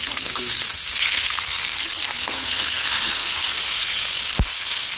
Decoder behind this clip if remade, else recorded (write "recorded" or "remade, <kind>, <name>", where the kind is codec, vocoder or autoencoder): remade, codec, SNAC